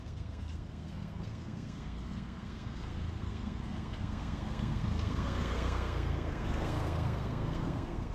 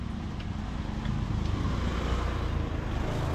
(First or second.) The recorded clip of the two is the second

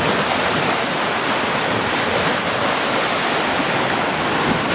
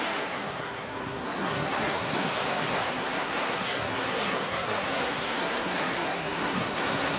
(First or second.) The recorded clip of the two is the first